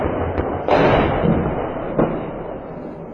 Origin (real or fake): real